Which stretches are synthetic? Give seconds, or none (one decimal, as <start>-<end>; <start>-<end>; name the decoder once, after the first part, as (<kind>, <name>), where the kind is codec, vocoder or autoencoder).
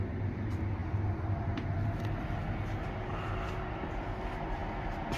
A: none